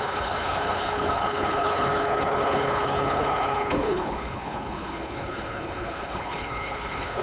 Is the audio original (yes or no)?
no